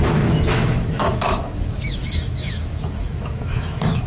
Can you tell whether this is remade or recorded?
remade